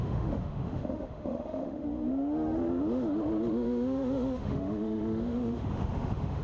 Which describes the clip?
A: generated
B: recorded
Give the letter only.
A